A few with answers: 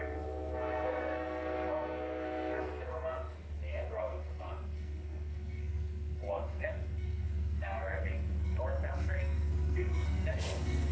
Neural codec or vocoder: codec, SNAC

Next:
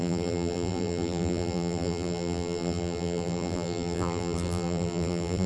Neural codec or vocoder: vocoder, BigVGAN v2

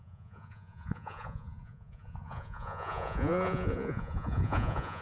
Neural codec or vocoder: vocoder, Vocos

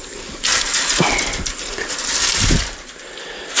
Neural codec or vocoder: none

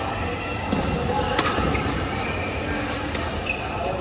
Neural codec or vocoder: none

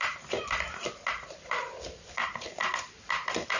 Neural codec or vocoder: vocoder, BigVGAN v2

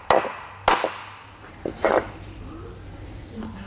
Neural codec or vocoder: none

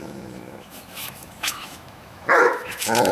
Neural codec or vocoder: autoencoder, DAC-VAE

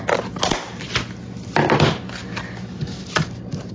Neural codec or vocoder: none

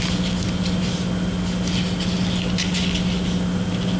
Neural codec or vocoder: none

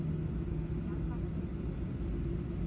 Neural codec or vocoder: none